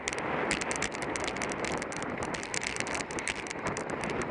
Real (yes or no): yes